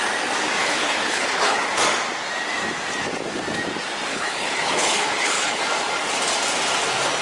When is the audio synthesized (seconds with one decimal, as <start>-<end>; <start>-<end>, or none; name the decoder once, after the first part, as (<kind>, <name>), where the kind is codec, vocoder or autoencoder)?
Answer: 0.6-1.8 (codec, HILCodec); 4.1-5.6